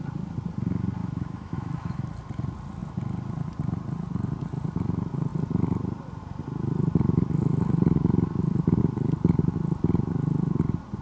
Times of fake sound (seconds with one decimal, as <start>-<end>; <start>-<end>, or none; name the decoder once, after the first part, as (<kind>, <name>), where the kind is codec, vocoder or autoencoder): 1.0-2.0 (autoencoder, DAC-VAE)